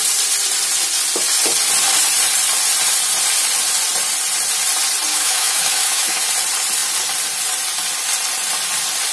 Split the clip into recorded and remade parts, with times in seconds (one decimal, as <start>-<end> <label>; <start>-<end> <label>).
0.0-5.1 recorded; 5.1-6.2 remade; 6.2-9.1 recorded